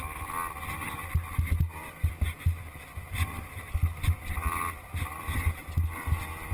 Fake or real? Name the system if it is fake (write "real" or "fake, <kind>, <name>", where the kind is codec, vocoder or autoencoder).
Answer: real